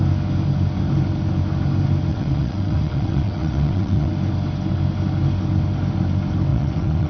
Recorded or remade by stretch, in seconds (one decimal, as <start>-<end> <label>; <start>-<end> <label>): 0.0-2.1 recorded; 2.1-4.1 remade; 4.1-6.5 recorded; 6.5-7.1 remade

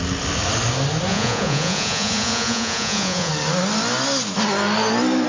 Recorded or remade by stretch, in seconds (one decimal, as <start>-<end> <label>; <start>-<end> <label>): 0.0-1.1 recorded; 1.1-3.3 remade; 3.3-5.3 recorded

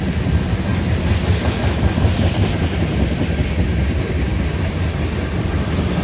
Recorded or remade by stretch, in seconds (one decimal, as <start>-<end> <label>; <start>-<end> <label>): 0.0-6.0 recorded